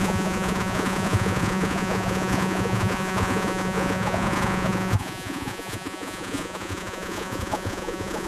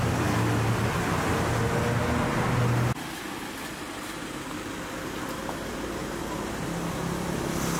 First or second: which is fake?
first